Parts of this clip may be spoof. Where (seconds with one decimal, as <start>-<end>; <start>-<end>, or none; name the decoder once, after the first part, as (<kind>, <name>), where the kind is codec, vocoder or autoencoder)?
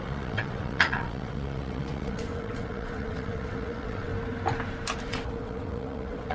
0.0-4.1 (vocoder, WaveNeXt); 5.0-6.3